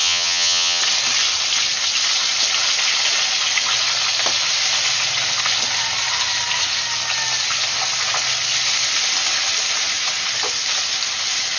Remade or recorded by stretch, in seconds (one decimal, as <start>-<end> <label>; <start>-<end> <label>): 0.0-0.8 remade; 0.8-11.6 recorded